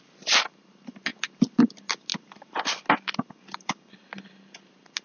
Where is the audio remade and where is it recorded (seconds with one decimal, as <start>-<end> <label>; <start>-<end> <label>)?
0.0-5.0 recorded